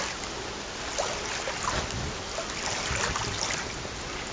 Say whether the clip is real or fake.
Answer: real